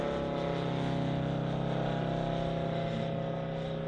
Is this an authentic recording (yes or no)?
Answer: yes